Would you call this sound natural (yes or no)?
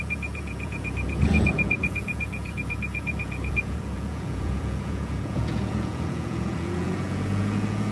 no